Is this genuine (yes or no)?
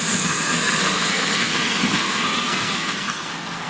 no